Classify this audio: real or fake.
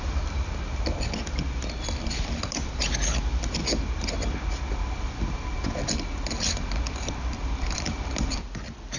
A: real